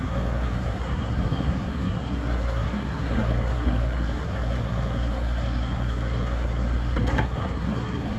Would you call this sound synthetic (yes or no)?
yes